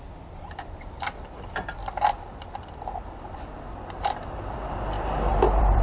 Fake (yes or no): yes